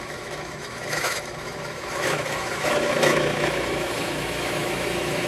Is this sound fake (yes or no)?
yes